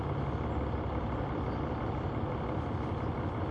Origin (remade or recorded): recorded